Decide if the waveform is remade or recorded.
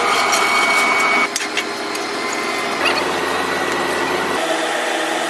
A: recorded